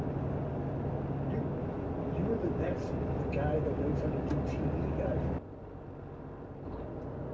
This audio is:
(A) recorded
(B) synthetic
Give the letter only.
A